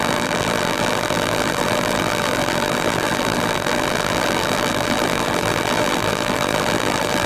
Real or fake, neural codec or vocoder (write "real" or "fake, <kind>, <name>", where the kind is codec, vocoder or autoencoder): fake, vocoder, BigVGAN v2